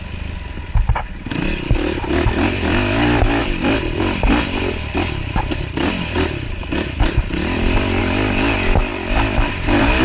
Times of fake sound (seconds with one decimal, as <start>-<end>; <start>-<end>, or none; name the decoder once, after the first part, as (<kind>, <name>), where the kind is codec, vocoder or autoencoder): 3.4-8.0 (vocoder, BigVGAN v2); 8.9-10.0